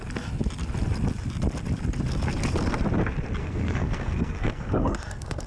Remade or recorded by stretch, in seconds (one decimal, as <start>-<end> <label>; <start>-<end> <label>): 0.0-3.4 recorded; 3.4-5.5 remade